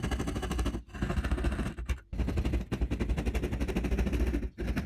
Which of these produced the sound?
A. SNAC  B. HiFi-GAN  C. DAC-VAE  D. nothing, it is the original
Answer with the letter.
D